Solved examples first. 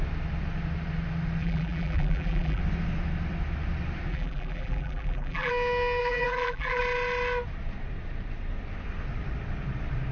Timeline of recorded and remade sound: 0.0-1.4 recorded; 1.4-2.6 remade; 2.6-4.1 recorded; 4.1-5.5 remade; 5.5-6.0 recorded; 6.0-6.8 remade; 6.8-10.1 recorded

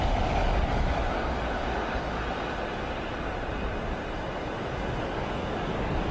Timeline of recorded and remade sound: 0.0-2.2 remade; 2.2-5.0 recorded; 5.0-6.1 remade